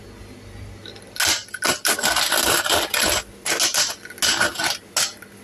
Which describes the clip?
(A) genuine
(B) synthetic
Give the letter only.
A